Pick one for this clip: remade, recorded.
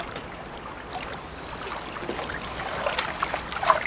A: recorded